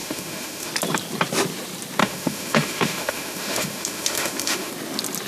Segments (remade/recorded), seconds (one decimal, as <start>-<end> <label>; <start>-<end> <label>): 0.0-0.7 remade; 0.7-2.0 recorded; 2.0-4.7 remade; 4.7-5.3 recorded